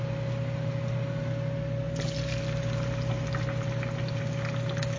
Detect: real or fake real